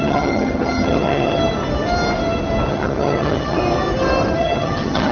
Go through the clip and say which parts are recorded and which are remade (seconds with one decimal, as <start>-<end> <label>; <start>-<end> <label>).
0.0-1.4 remade; 1.4-2.7 recorded; 2.7-3.6 remade; 3.6-4.4 recorded; 4.4-5.1 remade